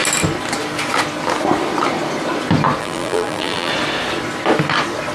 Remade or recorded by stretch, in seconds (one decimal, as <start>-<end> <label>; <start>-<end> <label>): 0.0-2.8 recorded; 2.8-3.7 remade; 3.7-5.1 recorded